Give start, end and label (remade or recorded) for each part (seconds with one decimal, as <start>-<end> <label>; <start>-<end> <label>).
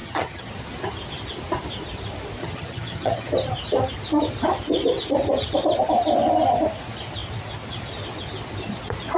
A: 0.0-0.5 remade; 0.5-2.4 recorded; 2.4-3.3 remade; 3.3-9.2 recorded